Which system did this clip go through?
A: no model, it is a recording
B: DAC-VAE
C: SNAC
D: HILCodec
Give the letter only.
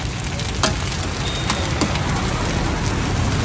A